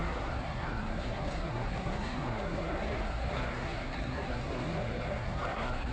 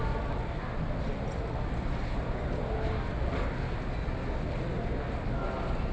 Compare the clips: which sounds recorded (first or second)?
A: second